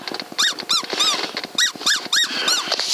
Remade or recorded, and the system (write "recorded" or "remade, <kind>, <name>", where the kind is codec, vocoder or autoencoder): recorded